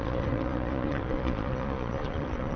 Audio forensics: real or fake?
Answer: fake